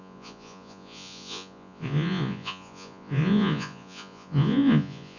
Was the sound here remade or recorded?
remade